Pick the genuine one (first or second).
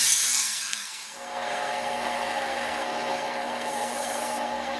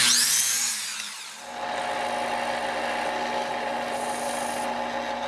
second